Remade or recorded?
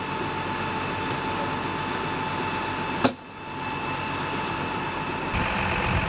recorded